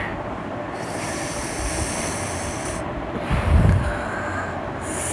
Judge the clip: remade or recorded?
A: recorded